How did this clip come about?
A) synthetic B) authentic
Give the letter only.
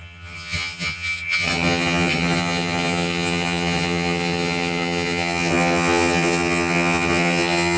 A